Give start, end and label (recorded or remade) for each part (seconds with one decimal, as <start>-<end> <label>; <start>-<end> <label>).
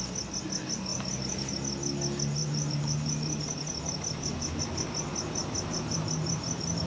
0.0-0.9 recorded; 0.9-1.5 remade; 1.5-2.4 recorded; 2.4-4.6 remade; 4.6-5.4 recorded; 5.4-6.9 remade